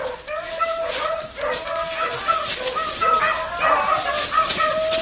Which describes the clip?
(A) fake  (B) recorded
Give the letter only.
B